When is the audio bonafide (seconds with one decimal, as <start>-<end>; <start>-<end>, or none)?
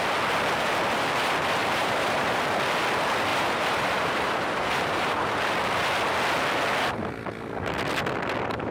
0.0-1.6; 2.4-3.3; 5.1-8.7